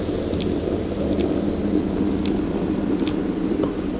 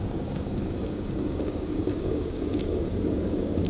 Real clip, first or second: first